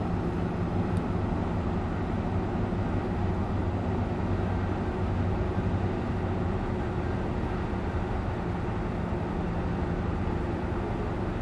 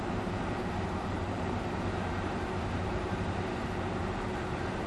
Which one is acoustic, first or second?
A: first